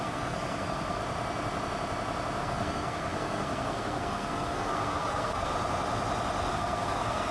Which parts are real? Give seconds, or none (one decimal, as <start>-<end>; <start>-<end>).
1.0-2.4; 5.5-6.5